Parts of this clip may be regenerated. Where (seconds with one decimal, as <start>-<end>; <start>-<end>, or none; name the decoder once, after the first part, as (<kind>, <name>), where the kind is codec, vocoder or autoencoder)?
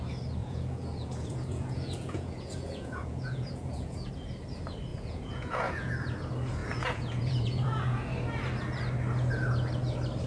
0.4-4.1 (vocoder, Vocos); 4.9-5.9; 6.6-7.8